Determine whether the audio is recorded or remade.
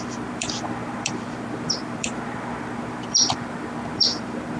remade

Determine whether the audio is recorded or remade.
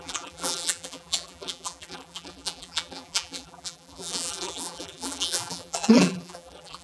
remade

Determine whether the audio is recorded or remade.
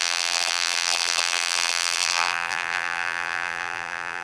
remade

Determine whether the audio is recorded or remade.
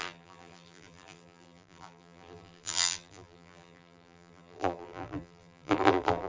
remade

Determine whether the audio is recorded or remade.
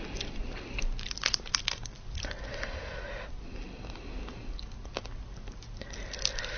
recorded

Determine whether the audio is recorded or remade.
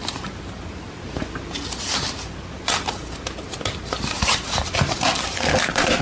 remade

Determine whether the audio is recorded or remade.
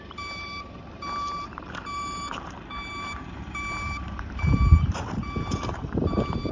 remade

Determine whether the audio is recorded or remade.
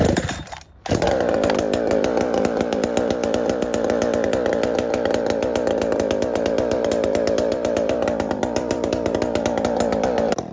remade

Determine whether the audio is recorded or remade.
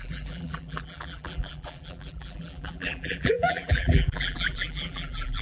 remade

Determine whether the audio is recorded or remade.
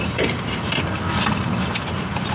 remade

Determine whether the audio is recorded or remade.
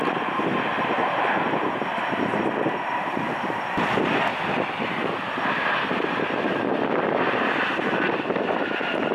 recorded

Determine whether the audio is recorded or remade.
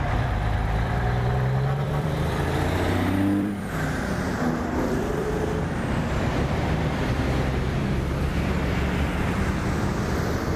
remade